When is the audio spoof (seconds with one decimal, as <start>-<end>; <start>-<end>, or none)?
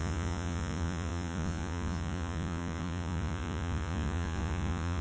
0.0-5.0